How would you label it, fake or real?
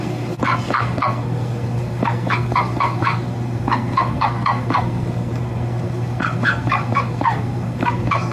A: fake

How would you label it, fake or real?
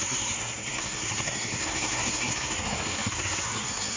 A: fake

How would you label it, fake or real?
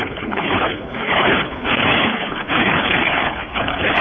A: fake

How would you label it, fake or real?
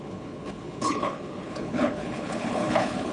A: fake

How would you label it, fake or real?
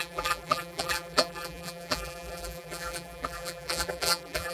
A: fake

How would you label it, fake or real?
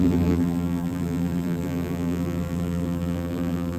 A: fake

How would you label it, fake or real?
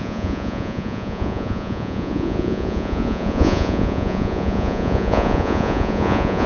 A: fake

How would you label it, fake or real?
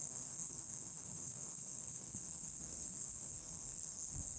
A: fake